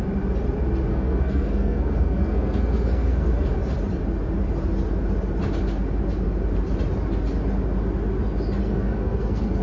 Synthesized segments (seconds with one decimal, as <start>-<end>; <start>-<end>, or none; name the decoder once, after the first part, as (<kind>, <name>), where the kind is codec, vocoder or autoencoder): 0.9-3.3 (codec, SNAC); 8.6-9.6